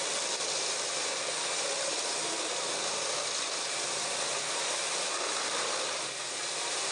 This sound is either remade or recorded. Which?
recorded